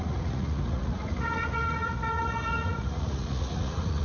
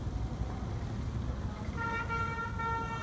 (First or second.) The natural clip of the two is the second